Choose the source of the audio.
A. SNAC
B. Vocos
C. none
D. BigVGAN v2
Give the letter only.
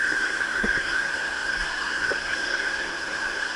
A